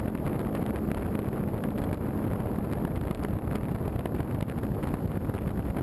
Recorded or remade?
recorded